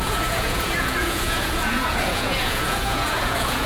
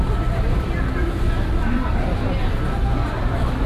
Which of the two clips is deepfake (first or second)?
first